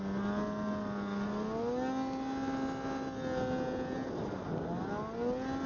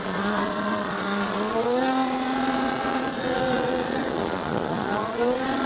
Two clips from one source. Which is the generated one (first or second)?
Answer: second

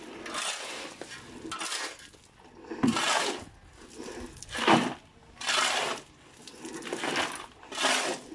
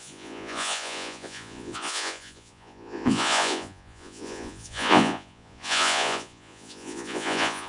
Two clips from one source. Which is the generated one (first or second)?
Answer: second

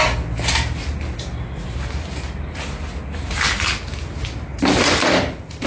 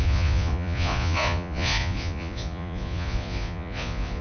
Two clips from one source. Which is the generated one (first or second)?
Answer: second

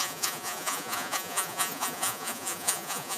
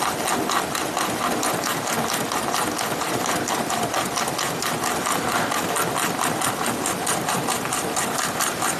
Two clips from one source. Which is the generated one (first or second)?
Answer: first